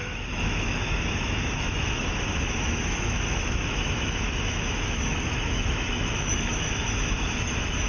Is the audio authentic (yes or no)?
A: no